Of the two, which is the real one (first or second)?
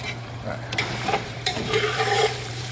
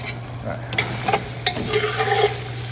second